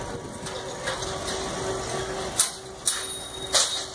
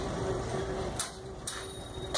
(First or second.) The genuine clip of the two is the first